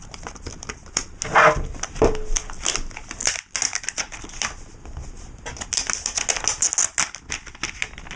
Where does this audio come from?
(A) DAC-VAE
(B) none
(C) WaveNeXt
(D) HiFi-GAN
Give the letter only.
B